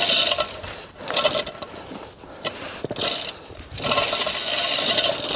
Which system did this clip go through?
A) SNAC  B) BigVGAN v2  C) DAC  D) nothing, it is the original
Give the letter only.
D